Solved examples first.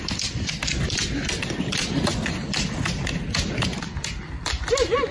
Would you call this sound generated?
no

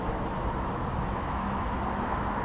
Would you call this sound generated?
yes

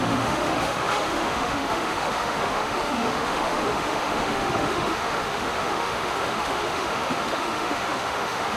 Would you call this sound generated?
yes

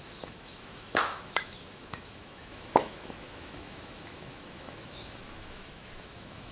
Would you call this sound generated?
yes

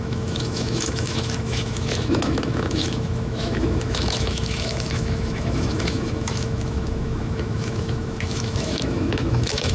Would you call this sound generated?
yes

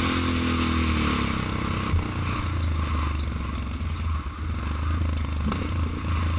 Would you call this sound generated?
no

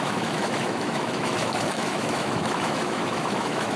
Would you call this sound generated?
yes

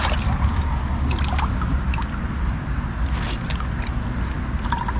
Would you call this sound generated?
no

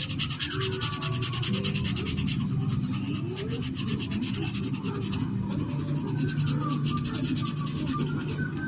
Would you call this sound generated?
no